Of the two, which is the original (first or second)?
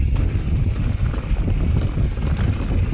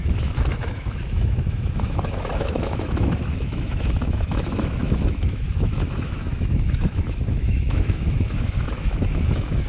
first